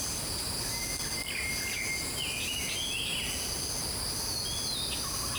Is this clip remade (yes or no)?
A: no